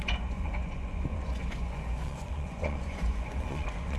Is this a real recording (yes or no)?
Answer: no